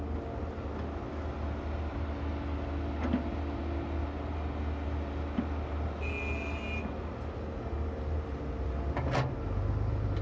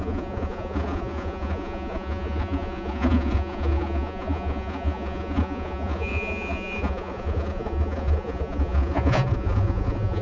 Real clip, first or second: first